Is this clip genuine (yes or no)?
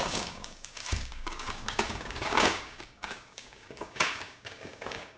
no